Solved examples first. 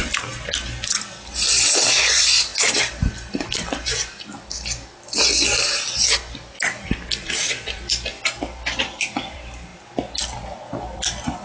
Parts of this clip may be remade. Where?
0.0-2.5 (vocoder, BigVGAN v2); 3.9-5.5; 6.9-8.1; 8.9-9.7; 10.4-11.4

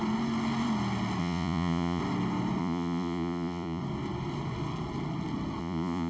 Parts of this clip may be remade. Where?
1.2-2.0 (vocoder, Vocos); 2.6-3.8; 5.6-6.1

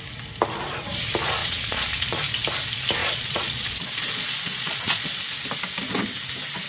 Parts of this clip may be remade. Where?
1.4-2.2 (vocoder, Vocos); 3.0-5.2

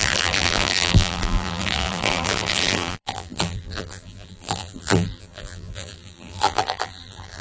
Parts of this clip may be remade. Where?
0.0-7.4 (vocoder, BigVGAN v2)

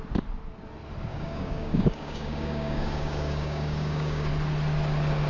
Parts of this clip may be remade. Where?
1.1-4.3 (codec, DAC)

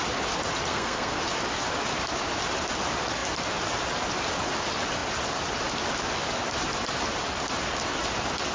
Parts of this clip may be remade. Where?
0.7-1.2 (codec, SNAC)

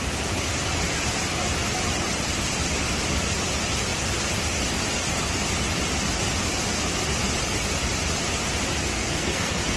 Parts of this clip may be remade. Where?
8.9-9.8 (codec, SNAC)

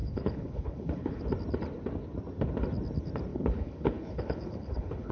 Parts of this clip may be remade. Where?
0.0-1.2 (codec, HILCodec); 3.3-5.1